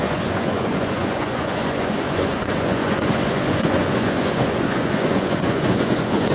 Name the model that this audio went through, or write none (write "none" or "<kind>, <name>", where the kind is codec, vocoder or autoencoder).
vocoder, Vocos